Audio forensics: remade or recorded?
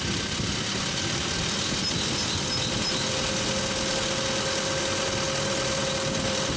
recorded